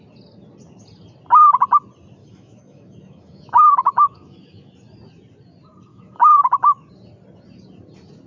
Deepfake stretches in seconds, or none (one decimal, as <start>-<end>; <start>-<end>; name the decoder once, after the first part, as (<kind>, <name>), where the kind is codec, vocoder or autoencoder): 2.2-4.7 (autoencoder, DAC-VAE); 5.9-6.9